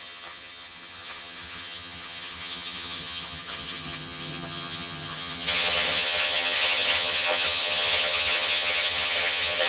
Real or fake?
fake